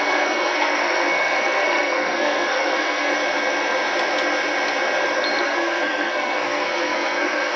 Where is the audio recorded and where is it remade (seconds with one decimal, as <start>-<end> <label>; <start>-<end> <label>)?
0.0-3.1 remade; 3.1-5.4 recorded; 5.4-7.6 remade

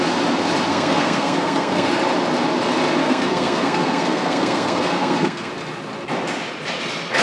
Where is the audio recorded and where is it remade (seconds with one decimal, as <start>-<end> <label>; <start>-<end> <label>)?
0.0-0.7 recorded; 0.7-1.9 remade; 1.9-3.0 recorded; 3.0-5.5 remade; 5.5-7.2 recorded

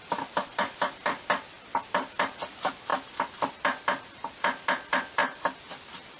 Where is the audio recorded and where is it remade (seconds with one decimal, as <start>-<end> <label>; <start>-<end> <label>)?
0.0-6.2 recorded

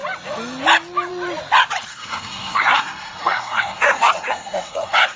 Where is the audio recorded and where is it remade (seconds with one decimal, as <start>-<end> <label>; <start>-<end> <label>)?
0.0-1.9 recorded; 1.9-5.2 remade

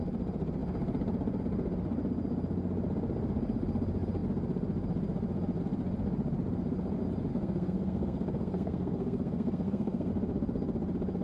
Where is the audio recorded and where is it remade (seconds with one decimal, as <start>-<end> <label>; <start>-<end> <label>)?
0.0-7.3 recorded; 7.3-10.1 remade; 10.1-11.2 recorded

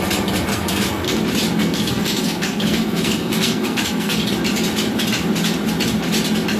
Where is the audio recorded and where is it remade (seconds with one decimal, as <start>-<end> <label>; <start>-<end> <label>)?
0.0-0.5 recorded; 0.5-1.2 remade; 1.2-1.6 recorded; 1.6-4.2 remade; 4.2-6.6 recorded

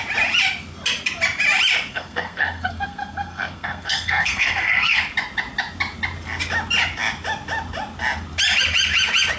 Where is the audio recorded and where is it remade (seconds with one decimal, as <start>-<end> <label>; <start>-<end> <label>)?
0.0-1.9 recorded; 1.9-5.0 remade; 5.0-9.4 recorded

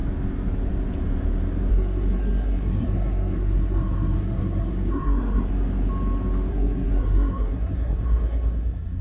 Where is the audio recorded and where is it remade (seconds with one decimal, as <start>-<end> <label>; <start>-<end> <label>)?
0.0-1.7 recorded; 1.7-5.5 remade; 5.5-6.5 recorded; 6.5-9.0 remade